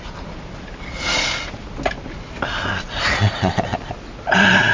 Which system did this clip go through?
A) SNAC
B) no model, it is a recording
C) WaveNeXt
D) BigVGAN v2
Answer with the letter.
B